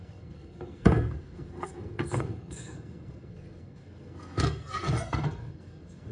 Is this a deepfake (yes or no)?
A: yes